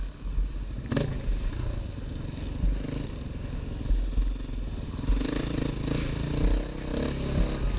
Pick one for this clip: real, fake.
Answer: real